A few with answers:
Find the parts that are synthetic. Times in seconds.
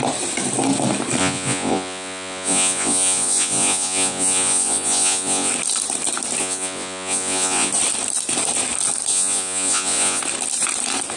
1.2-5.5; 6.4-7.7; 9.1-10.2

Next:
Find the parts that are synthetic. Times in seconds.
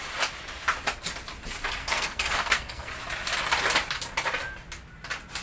1.8-2.9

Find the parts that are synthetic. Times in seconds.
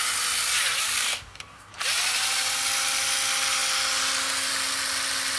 1.0-1.7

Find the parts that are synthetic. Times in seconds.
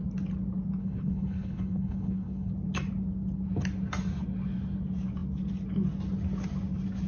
0.8-2.5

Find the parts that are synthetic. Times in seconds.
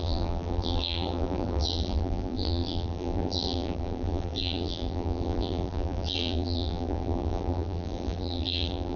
0.0-9.0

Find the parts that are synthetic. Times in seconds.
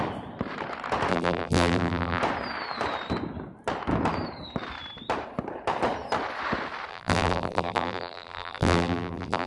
1.1-2.2; 6.9-9.5